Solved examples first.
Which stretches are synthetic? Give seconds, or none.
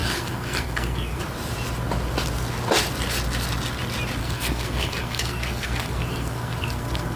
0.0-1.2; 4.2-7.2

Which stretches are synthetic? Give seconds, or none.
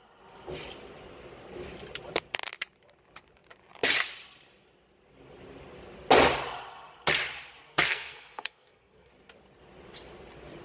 7.7-9.1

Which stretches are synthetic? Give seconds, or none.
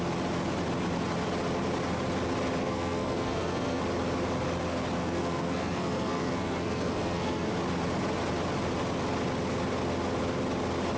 2.6-3.8; 5.0-7.5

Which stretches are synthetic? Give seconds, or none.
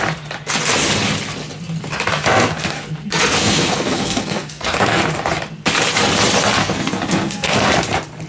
2.1-5.0; 6.6-7.7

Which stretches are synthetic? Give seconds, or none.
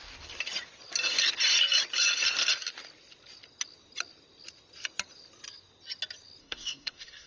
6.4-7.3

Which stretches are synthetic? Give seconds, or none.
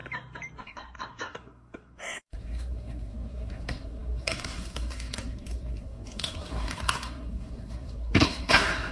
0.6-8.9